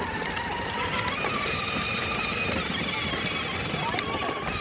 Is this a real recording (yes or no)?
yes